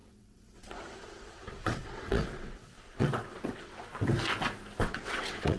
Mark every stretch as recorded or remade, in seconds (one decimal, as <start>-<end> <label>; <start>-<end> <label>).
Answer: 0.0-3.9 remade; 3.9-4.8 recorded; 4.8-5.6 remade